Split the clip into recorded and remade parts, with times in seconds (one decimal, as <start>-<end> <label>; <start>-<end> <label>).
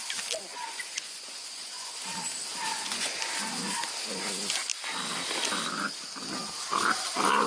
0.0-0.5 recorded; 0.5-1.9 remade; 1.9-2.7 recorded; 2.7-3.2 remade; 3.2-7.5 recorded